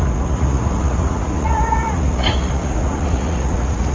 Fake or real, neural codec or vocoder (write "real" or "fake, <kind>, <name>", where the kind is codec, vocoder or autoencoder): fake, vocoder, Vocos